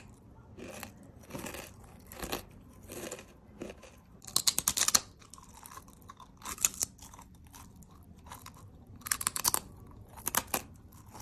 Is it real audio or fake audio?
real